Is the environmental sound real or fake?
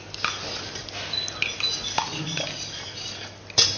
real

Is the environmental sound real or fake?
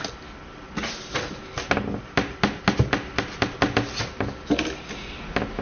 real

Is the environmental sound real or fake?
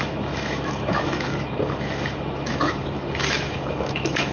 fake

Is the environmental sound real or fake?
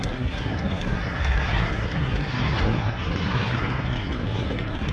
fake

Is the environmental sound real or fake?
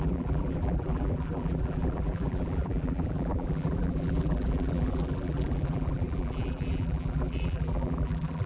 fake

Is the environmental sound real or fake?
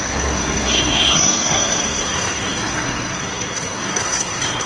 fake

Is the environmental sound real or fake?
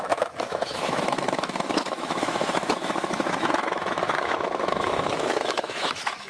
fake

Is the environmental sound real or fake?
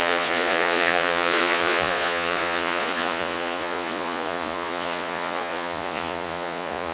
fake